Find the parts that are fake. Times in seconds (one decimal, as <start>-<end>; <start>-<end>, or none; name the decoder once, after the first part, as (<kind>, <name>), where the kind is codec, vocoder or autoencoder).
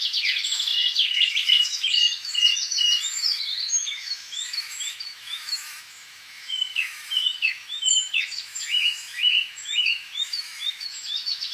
0.0-11.5 (autoencoder, DAC-VAE)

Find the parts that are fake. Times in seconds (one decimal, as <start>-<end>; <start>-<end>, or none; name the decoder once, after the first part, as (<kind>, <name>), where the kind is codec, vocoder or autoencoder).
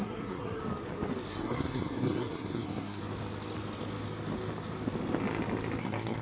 0.0-0.6 (codec, SNAC); 1.3-3.0; 5.8-6.2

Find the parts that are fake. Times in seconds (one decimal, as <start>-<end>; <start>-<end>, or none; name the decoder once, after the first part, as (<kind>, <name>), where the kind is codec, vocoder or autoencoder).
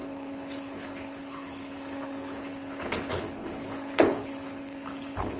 0.0-5.4 (codec, HILCodec)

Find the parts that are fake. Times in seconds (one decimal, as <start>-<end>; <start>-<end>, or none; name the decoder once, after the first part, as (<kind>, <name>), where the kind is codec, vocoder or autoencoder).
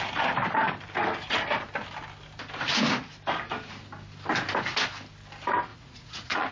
5.7-6.5 (vocoder, Vocos)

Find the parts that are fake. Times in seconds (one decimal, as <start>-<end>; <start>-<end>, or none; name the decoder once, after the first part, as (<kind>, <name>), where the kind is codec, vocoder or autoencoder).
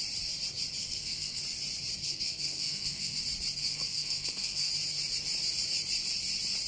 0.8-1.4 (codec, SNAC); 2.0-3.2; 3.6-4.7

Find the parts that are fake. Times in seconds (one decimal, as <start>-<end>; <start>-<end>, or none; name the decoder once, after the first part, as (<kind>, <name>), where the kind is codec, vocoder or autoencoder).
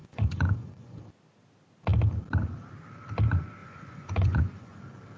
0.0-1.0 (vocoder, Vocos); 3.6-4.8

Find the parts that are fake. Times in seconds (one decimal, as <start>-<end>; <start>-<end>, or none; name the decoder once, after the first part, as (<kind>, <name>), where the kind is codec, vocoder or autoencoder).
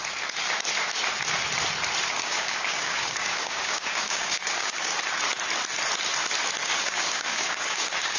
2.2-5.0 (codec, DAC); 6.6-8.2